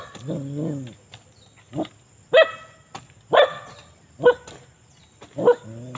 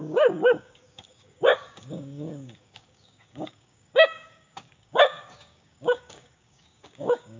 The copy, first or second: second